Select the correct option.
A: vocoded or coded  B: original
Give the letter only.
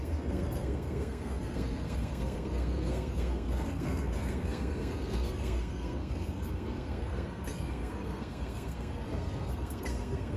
A